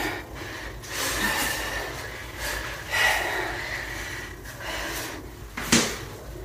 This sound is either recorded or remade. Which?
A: recorded